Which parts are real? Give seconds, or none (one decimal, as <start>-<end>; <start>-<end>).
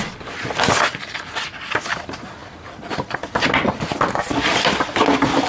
0.0-5.5